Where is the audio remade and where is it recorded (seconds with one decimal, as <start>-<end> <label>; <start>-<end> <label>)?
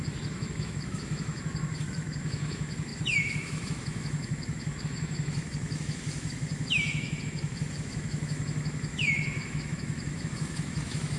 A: 0.0-11.2 remade